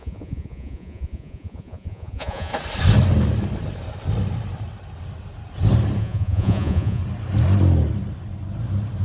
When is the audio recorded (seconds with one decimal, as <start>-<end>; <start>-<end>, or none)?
2.5-6.0; 7.0-9.0